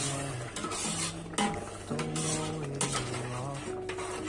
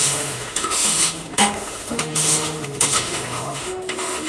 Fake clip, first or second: second